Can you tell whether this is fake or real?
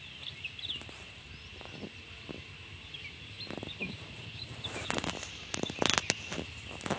real